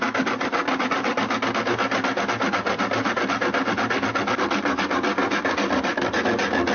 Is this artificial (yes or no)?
no